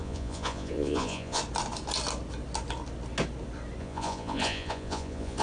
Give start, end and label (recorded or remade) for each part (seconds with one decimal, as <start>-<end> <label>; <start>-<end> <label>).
0.0-1.4 remade; 1.4-3.8 recorded; 3.8-5.4 remade